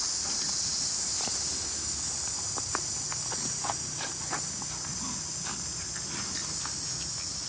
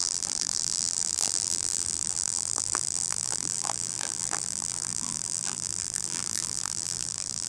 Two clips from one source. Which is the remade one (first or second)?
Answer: second